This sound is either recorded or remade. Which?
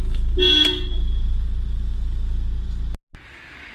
recorded